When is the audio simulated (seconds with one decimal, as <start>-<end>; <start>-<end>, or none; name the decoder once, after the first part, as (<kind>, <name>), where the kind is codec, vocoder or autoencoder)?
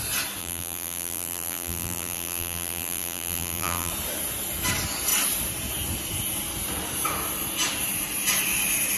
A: 0.4-3.9 (vocoder, BigVGAN v2)